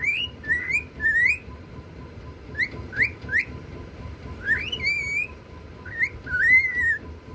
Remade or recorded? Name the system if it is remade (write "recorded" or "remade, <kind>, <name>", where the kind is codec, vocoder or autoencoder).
recorded